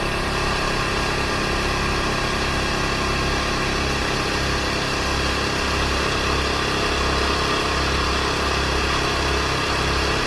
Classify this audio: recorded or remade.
recorded